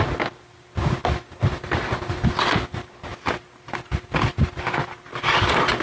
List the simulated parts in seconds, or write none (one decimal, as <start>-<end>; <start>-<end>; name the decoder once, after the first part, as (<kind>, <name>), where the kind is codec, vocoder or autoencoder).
none

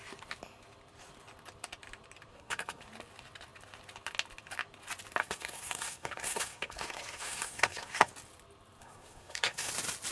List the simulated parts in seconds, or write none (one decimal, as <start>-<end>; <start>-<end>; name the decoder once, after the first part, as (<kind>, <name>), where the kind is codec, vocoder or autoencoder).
2.3-2.8 (codec, SNAC); 5.2-8.1; 8.8-9.7

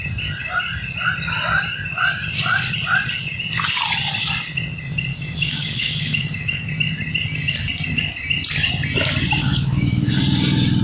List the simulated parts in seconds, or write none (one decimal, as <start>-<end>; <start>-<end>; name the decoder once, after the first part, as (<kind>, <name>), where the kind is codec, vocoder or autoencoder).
5.1-6.7 (autoencoder, DAC-VAE); 9.5-10.1